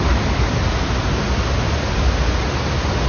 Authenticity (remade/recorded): recorded